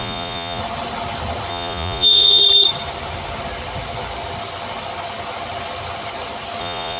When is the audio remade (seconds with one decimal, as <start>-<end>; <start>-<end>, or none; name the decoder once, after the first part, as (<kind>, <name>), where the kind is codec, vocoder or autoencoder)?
0.0-0.6 (vocoder, Vocos); 1.5-2.4; 6.6-7.0